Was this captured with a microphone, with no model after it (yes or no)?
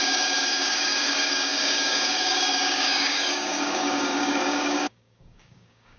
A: no